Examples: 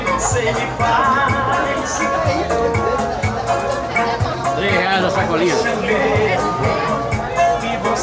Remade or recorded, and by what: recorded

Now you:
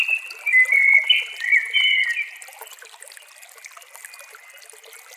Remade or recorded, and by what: recorded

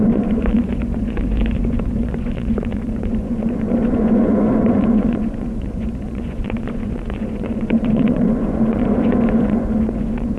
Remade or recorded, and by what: remade, vocoder, Vocos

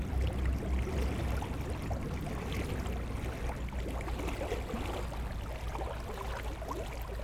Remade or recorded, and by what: recorded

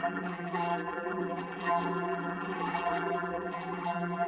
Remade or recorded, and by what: remade, vocoder, BigVGAN v2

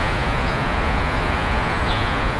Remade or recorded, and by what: remade, vocoder, Vocos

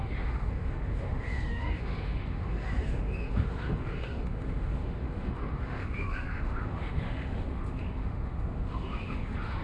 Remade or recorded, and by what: remade, autoencoder, DAC-VAE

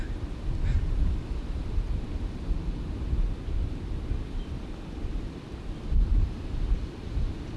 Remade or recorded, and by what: recorded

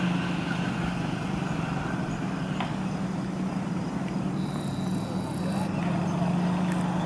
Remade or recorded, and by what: recorded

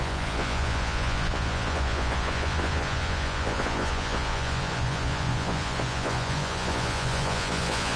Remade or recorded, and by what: remade, vocoder, Vocos